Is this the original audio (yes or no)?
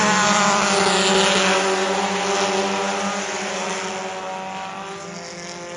yes